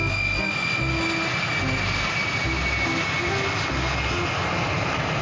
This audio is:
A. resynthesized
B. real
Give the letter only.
B